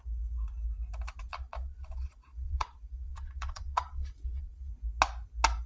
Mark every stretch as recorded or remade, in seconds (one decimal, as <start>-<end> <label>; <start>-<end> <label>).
0.0-1.3 recorded; 1.3-4.7 remade; 4.7-5.7 recorded